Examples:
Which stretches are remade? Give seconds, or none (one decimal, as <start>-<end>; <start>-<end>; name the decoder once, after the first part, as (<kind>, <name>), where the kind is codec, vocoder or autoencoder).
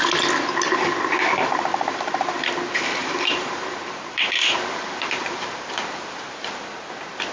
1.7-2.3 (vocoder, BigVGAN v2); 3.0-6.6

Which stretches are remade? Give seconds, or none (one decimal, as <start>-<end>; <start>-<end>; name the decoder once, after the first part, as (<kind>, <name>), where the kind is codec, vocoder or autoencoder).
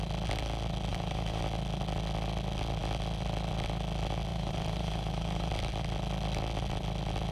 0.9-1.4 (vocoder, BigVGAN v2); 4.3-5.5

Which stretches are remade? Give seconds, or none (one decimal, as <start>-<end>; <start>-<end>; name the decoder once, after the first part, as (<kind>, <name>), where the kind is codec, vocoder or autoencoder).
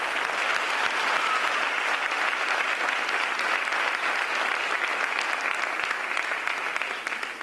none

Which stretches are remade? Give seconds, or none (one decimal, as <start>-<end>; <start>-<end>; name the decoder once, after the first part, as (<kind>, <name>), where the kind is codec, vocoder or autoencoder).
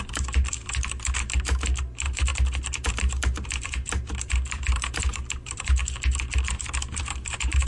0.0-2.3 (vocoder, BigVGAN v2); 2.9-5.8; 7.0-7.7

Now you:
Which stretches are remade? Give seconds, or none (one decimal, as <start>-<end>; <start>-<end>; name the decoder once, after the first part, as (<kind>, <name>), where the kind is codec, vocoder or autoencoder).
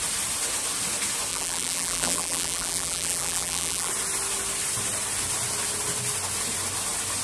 1.3-3.9 (vocoder, BigVGAN v2)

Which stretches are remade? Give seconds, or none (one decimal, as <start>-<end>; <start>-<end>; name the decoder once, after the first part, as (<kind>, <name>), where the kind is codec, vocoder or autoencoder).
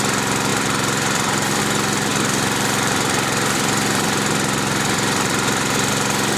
0.5-1.6 (vocoder, BigVGAN v2); 2.1-5.9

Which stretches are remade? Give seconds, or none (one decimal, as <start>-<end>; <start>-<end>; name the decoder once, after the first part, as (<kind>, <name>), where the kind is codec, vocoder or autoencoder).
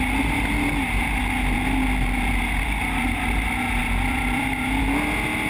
3.8-4.8 (vocoder, BigVGAN v2)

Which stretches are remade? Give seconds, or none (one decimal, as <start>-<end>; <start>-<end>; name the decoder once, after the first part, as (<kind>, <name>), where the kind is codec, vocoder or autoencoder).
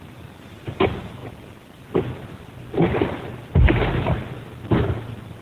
0.0-1.2 (vocoder, BigVGAN v2); 4.4-5.4